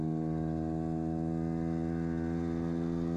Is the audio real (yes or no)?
yes